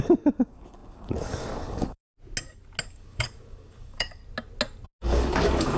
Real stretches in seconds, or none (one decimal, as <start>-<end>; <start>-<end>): 2.1-2.8; 4.2-5.0